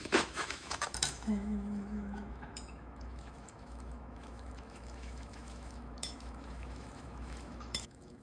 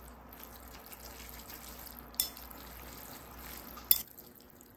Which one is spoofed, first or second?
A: first